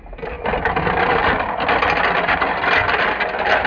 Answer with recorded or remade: recorded